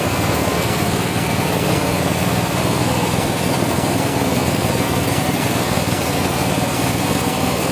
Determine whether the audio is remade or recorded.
remade